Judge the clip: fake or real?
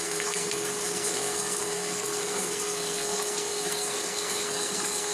fake